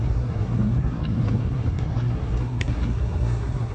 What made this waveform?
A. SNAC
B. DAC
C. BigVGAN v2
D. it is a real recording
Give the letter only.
A